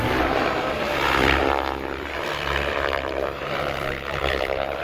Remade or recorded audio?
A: remade